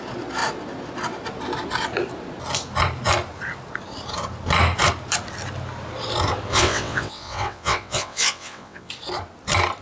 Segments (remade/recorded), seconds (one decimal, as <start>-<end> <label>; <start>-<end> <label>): 0.0-6.5 recorded; 6.5-8.9 remade; 8.9-9.8 recorded